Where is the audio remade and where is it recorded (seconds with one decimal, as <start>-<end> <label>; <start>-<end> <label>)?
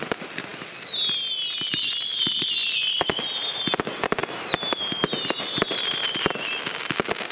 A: 0.0-7.3 recorded